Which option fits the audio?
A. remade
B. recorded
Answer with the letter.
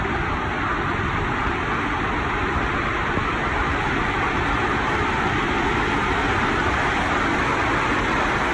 B